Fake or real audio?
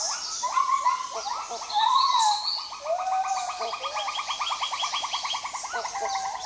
real